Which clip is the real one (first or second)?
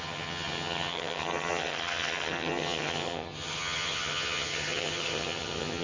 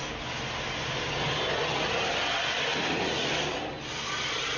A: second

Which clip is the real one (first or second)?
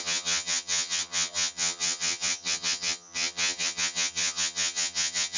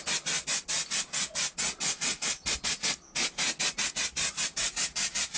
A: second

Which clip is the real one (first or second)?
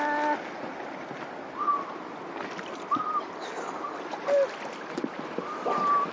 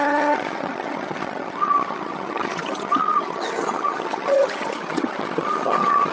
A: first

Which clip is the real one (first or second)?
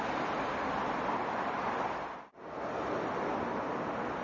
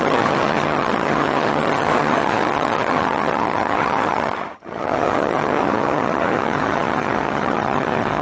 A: first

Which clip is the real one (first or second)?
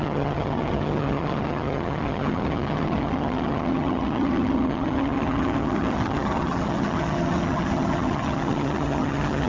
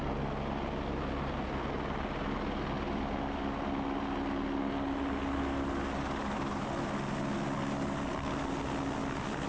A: second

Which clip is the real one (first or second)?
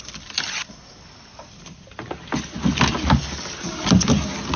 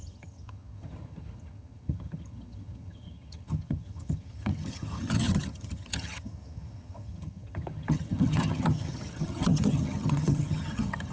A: first